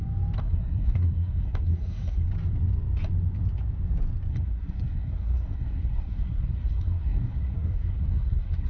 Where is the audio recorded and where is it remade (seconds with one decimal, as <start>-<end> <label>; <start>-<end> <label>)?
0.0-0.4 recorded; 0.4-2.3 remade; 2.3-4.3 recorded; 4.3-8.7 remade